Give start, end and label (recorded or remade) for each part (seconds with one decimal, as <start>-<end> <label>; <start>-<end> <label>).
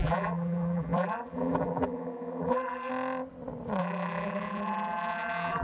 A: 0.0-2.9 remade; 2.9-3.8 recorded; 3.8-5.6 remade